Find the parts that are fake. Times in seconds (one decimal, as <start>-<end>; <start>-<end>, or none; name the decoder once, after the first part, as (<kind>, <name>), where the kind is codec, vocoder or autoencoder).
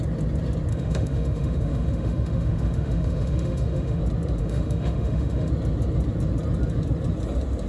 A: 0.7-4.0 (autoencoder, DAC-VAE); 4.4-5.5